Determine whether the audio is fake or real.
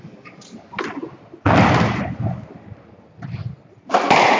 real